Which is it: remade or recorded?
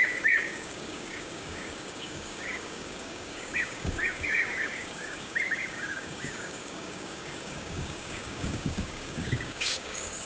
remade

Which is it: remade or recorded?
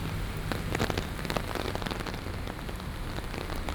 recorded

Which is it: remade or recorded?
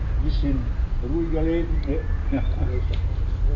recorded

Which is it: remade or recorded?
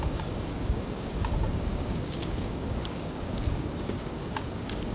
remade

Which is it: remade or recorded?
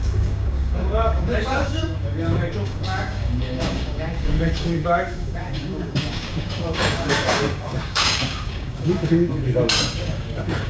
remade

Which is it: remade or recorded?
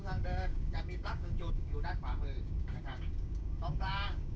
remade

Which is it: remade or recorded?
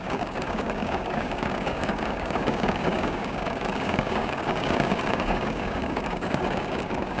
remade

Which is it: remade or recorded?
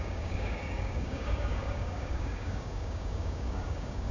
remade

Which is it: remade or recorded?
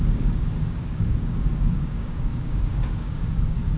remade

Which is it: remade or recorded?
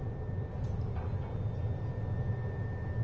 recorded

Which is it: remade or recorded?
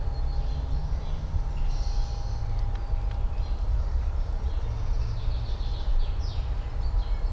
recorded